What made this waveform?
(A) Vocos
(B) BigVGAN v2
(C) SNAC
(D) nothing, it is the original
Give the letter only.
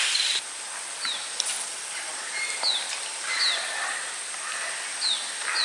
D